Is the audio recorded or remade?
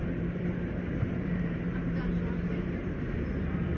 remade